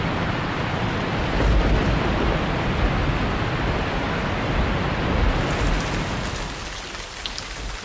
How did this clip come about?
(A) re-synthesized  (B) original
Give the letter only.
B